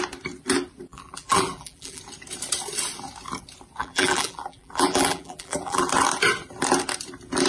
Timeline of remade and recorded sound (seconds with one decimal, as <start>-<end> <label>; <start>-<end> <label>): 0.0-0.9 recorded; 0.9-2.0 remade; 2.0-3.8 recorded; 3.8-5.8 remade; 5.8-7.5 recorded